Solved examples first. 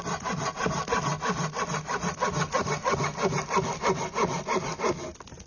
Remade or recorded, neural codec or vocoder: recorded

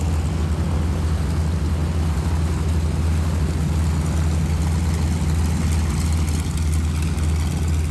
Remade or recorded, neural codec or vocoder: recorded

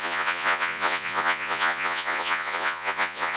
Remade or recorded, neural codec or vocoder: remade, vocoder, Vocos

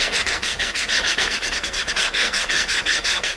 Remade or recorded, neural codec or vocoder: remade, codec, SNAC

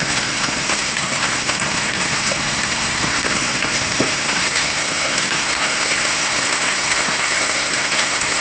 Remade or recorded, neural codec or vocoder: remade, codec, SNAC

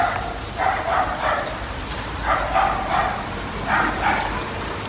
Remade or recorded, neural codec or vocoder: recorded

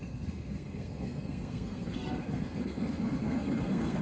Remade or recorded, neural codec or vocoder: remade, codec, SNAC